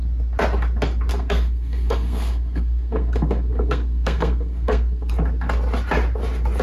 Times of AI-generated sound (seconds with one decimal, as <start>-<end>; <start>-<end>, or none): 1.1-5.1